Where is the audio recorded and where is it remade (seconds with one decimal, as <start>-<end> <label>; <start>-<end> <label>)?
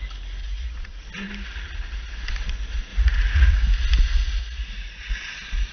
0.0-0.4 recorded; 0.4-1.0 remade; 1.0-2.9 recorded; 2.9-3.6 remade; 3.6-4.4 recorded; 4.4-5.1 remade; 5.1-5.7 recorded